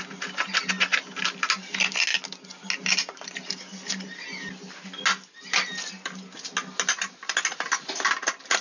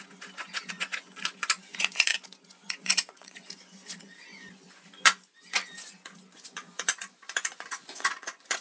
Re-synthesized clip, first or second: second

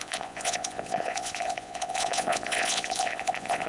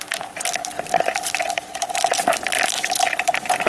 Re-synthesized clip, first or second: first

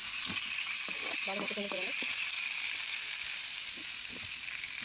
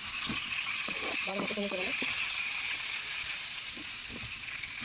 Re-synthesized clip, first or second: second